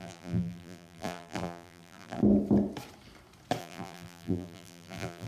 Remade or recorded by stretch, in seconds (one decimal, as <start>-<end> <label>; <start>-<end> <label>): 0.0-2.2 remade; 2.2-3.6 recorded; 3.6-5.3 remade